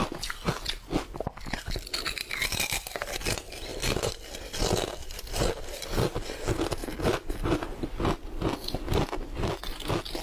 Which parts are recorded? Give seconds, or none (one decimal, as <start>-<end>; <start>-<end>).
0.0-3.7; 4.2-5.0; 5.8-6.8; 7.5-10.2